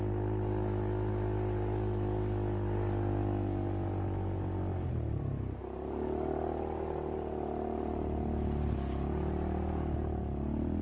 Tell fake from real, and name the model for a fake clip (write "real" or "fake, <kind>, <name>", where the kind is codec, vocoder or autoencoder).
real